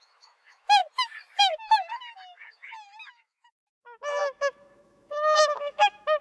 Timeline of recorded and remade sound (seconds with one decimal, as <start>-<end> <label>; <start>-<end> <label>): 0.0-0.8 remade; 0.8-1.4 recorded; 1.4-6.2 remade